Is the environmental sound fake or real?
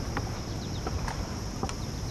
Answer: fake